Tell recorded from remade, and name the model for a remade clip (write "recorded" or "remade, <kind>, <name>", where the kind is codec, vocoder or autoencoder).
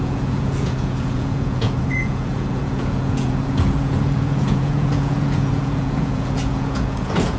remade, vocoder, Vocos